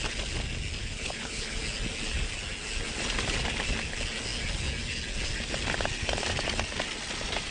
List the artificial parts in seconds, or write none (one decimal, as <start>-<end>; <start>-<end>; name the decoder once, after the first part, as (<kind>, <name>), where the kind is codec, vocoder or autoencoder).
0.8-1.6 (codec, HILCodec)